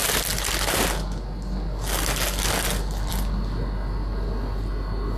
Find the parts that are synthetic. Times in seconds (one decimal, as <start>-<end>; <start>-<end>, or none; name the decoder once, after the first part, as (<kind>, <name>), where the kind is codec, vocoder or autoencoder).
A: none